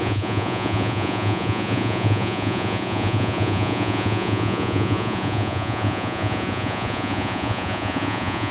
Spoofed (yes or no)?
yes